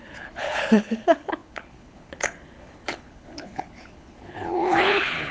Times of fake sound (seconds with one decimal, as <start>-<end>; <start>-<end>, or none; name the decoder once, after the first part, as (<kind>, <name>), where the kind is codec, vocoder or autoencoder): 0.0-5.3 (codec, HILCodec)